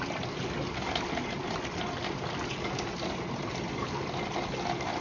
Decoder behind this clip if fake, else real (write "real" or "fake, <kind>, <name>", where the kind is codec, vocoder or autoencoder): real